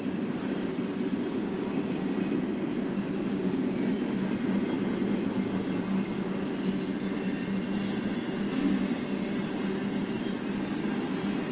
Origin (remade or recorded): recorded